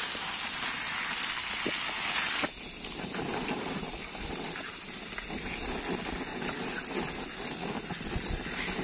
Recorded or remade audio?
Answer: recorded